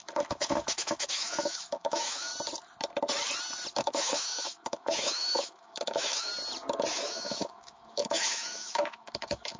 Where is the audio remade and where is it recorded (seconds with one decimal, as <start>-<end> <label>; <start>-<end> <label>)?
0.0-2.3 remade; 2.3-3.7 recorded; 3.7-6.3 remade; 6.3-6.9 recorded; 6.9-9.6 remade